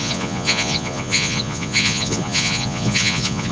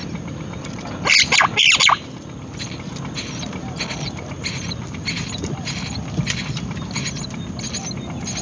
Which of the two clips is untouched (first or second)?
second